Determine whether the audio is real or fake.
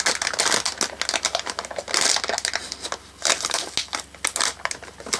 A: real